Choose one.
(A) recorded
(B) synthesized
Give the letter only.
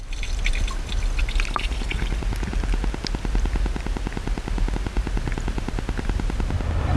A